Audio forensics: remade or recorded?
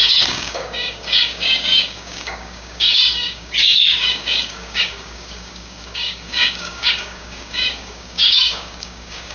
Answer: remade